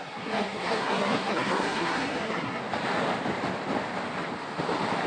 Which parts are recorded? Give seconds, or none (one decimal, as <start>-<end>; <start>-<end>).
2.6-5.1